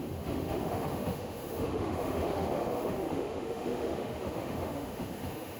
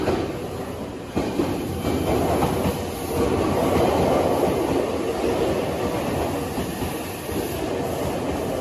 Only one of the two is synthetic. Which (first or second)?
first